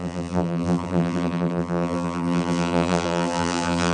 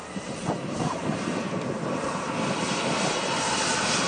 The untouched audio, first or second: second